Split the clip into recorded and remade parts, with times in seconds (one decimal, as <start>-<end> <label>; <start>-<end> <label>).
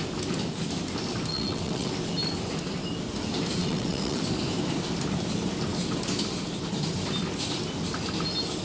0.0-1.3 recorded; 1.3-1.9 remade; 1.9-3.6 recorded; 3.6-4.2 remade; 4.2-8.6 recorded